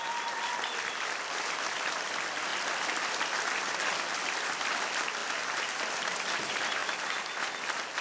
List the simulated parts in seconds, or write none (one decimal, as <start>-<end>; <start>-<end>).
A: none

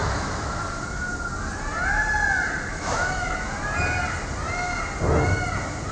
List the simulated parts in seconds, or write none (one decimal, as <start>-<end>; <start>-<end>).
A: 0.0-0.6; 2.7-3.4

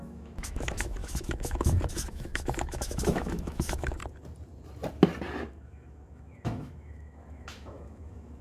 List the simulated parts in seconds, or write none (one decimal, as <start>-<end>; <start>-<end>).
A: 0.0-4.0; 5.5-8.4

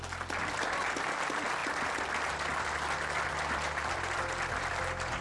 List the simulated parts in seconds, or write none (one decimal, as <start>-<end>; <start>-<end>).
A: none